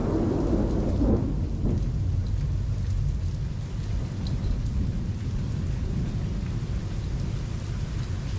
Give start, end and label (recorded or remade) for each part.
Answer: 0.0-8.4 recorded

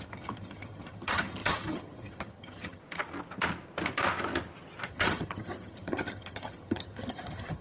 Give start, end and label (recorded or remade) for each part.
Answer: 0.0-2.8 remade; 2.8-4.9 recorded; 4.9-7.6 remade

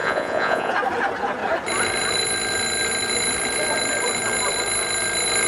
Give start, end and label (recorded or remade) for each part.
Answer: 0.0-0.7 remade; 0.7-5.5 recorded